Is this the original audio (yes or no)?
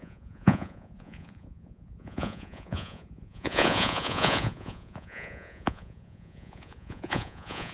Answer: no